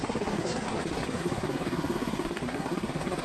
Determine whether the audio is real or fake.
fake